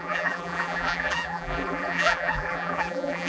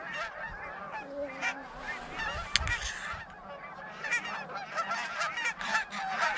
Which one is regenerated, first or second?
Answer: first